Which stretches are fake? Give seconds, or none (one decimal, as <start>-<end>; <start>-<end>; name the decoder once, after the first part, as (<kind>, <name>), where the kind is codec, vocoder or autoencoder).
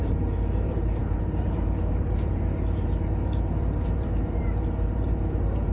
0.0-5.7 (vocoder, BigVGAN v2)